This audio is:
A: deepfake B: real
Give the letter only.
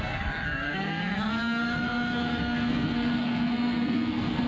A